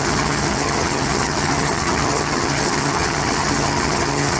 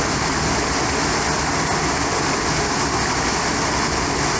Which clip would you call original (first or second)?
second